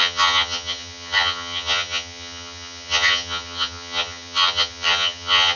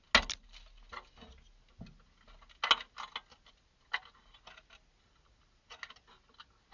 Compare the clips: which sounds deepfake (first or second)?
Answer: first